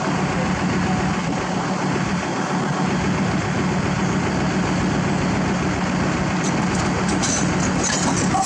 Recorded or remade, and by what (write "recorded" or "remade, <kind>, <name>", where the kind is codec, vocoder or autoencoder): recorded